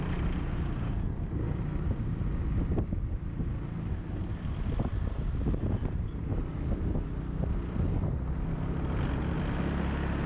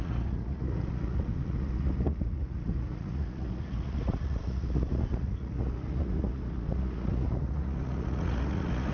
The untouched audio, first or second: first